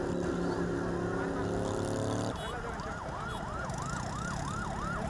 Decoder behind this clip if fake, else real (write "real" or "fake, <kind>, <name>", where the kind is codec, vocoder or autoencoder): real